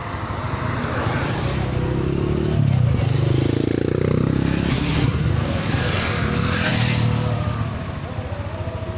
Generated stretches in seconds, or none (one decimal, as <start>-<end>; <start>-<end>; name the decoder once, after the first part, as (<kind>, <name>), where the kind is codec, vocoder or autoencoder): 4.7-5.3 (codec, SNAC)